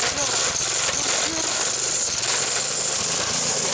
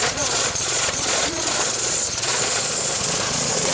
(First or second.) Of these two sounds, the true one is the first